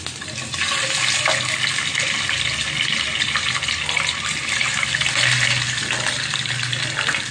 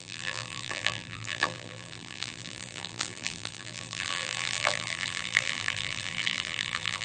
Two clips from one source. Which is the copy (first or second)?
second